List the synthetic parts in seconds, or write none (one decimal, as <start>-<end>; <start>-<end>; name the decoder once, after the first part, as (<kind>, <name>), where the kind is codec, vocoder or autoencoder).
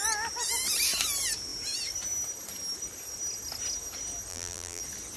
4.3-4.8 (vocoder, BigVGAN v2)